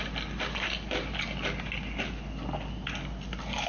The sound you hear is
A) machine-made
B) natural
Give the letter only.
B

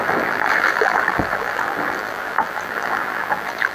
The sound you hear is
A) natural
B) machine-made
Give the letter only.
B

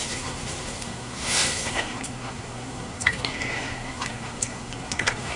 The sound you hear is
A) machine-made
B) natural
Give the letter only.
A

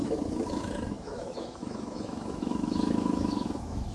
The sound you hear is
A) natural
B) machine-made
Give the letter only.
B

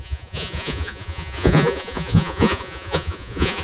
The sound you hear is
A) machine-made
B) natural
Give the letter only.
A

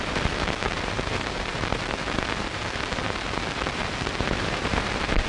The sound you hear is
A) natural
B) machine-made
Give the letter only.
B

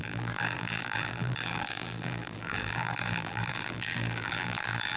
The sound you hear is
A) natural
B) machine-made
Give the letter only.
B